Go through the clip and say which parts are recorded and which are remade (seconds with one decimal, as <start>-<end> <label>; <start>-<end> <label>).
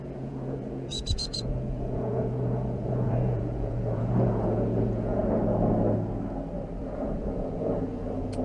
0.0-5.2 remade; 5.2-6.8 recorded; 6.8-8.4 remade